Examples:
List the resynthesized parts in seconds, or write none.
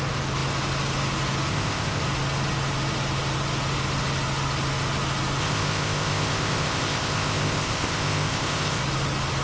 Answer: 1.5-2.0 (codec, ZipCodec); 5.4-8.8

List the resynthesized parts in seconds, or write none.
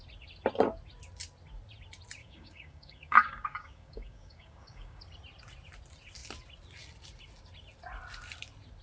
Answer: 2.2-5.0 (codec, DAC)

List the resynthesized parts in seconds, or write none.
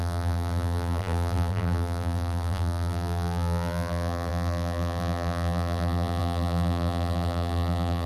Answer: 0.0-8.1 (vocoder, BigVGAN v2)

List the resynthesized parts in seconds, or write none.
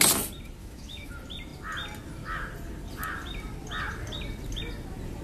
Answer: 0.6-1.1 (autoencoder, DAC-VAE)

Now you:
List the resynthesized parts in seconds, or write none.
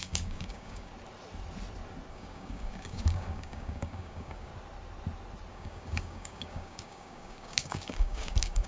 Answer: 0.0-0.9 (codec, DAC); 2.1-4.5; 5.5-8.7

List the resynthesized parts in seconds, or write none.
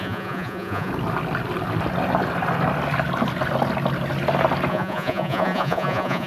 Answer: 0.0-0.9 (vocoder, Vocos); 4.7-6.3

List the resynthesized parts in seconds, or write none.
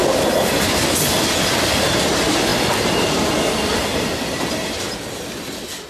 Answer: none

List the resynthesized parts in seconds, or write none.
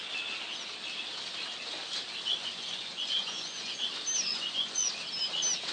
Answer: 2.4-3.9 (vocoder, Vocos); 4.3-4.9